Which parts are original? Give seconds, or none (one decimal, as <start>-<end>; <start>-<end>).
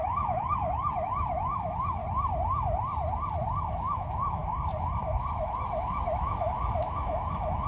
2.0-3.7; 4.4-5.3